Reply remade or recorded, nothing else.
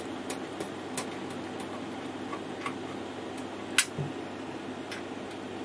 recorded